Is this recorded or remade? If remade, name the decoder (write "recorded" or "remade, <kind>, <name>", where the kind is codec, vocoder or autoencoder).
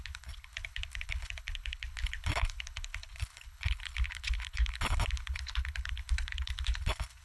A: remade, codec, HILCodec